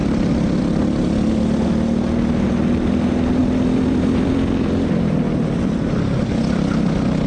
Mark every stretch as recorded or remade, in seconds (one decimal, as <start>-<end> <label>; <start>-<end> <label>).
0.0-0.6 remade; 0.6-3.4 recorded; 3.4-5.0 remade; 5.0-7.3 recorded